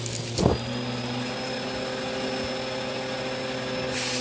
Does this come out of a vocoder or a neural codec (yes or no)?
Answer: no